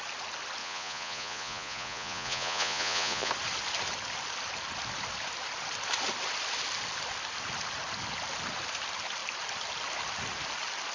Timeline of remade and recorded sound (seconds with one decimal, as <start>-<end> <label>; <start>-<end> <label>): 0.0-0.6 recorded; 0.6-3.3 remade; 3.3-10.9 recorded